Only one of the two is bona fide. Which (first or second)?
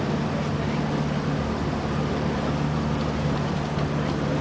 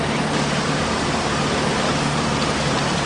first